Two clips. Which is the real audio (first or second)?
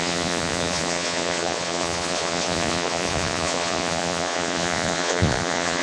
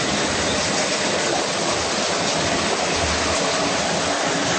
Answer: second